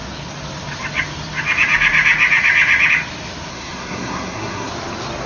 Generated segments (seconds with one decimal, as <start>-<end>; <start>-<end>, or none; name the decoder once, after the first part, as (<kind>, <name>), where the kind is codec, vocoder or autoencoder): 3.5-4.7 (codec, SNAC)